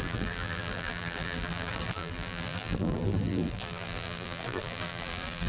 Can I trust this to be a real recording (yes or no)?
no